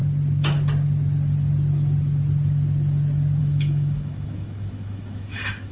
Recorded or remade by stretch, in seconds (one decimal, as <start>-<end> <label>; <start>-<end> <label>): 0.0-3.4 recorded; 3.4-5.7 remade